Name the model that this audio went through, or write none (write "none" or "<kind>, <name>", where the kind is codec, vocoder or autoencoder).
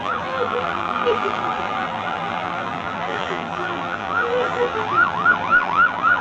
vocoder, BigVGAN v2